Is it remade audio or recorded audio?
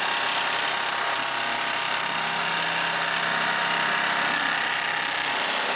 recorded